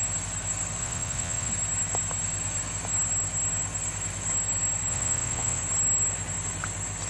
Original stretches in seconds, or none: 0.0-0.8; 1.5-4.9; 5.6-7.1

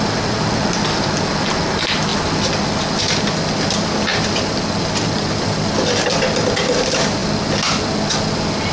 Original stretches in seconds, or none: 0.0-8.7